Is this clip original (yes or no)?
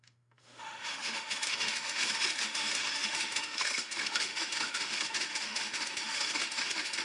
no